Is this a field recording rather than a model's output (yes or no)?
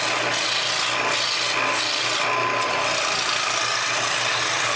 yes